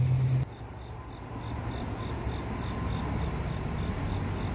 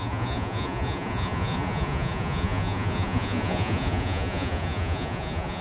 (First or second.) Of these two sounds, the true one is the first